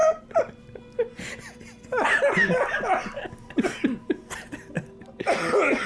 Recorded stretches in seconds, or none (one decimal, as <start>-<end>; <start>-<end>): 0.0-5.9